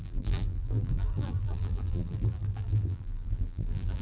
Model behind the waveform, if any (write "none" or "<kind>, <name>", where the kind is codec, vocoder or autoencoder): vocoder, BigVGAN v2